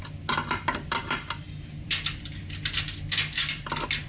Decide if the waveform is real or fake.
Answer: real